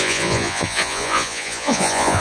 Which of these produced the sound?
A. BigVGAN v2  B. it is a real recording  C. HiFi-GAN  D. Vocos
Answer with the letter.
D